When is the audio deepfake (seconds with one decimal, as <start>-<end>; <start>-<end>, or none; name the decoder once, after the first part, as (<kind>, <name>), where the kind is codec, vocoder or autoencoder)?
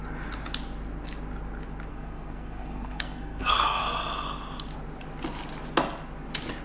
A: 1.9-3.8 (codec, SNAC)